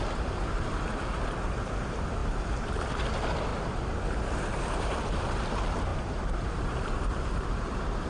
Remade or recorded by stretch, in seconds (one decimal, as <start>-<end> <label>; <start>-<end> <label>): 0.0-2.2 recorded; 2.2-2.9 remade; 2.9-3.5 recorded; 3.5-4.8 remade; 4.8-5.9 recorded; 5.9-8.1 remade